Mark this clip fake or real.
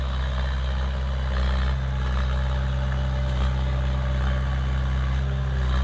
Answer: real